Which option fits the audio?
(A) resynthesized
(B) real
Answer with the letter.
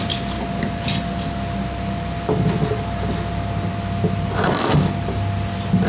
B